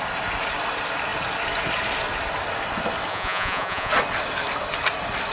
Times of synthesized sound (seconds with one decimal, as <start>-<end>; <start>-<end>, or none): 3.1-3.9